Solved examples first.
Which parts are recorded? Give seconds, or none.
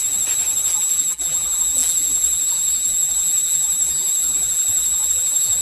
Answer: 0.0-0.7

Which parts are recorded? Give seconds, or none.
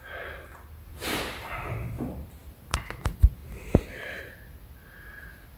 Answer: 0.0-0.9; 1.5-3.4; 4.2-5.6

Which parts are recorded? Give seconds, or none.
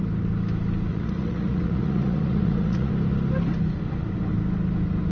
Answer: 0.0-0.9; 2.9-5.1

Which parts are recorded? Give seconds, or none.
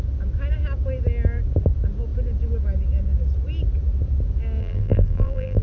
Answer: 0.0-4.6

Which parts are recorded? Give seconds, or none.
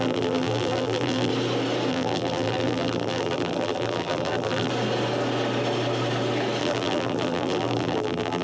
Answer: 1.3-1.9; 4.7-6.6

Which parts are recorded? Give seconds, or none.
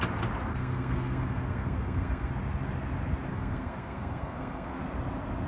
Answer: 0.0-0.5; 2.3-3.3; 4.8-5.5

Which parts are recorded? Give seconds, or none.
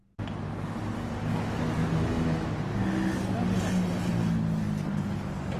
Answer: 0.0-5.6